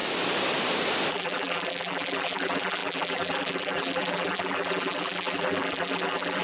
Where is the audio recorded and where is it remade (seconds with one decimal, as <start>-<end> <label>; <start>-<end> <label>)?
0.0-1.1 recorded; 1.1-6.4 remade